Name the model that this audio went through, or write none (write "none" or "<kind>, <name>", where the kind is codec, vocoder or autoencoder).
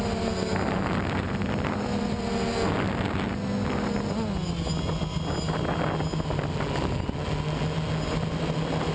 none